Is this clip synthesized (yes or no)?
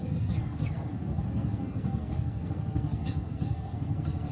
yes